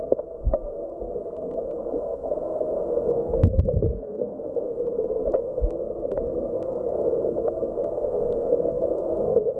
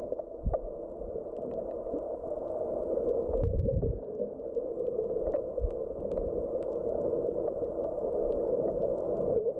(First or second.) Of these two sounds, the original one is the second